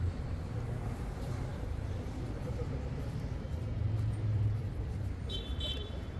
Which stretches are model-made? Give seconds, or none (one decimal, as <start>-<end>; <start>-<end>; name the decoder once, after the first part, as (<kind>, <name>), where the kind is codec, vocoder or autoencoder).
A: 0.0-6.2 (vocoder, BigVGAN v2)